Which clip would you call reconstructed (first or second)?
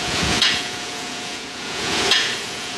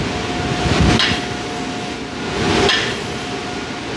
first